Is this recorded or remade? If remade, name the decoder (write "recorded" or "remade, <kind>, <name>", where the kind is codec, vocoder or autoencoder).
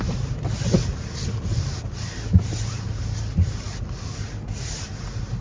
recorded